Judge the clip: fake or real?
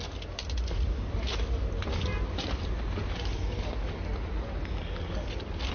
real